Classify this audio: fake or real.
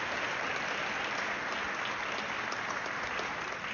real